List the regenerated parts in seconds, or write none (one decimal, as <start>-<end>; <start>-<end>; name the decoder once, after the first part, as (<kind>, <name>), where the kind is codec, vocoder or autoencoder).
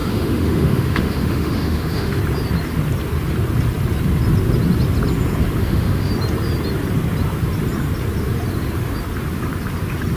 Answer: 0.0-2.2 (autoencoder, DAC-VAE); 5.6-6.1